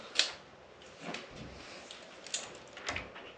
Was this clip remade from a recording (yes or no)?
no